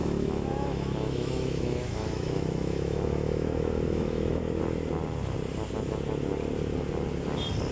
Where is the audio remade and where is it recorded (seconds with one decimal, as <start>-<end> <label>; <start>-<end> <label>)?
0.0-4.6 remade; 4.6-7.7 recorded